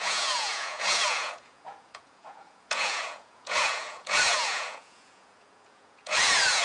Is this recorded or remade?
remade